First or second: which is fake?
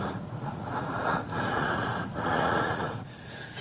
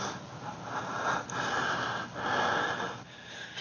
first